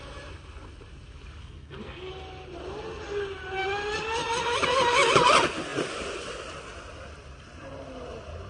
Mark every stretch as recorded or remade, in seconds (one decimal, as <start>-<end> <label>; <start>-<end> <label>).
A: 0.0-1.4 recorded; 1.4-2.1 remade; 2.1-8.5 recorded